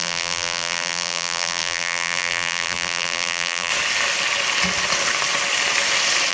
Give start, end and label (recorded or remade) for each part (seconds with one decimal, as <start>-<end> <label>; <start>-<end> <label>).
0.0-3.7 remade; 3.7-6.3 recorded